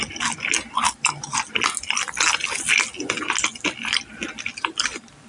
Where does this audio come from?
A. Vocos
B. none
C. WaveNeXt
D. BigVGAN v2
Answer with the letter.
B